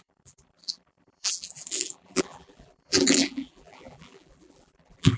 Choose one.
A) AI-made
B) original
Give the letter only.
A